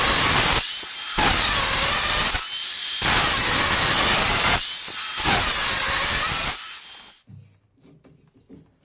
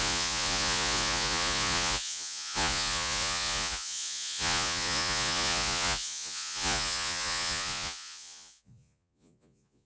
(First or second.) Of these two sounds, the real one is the first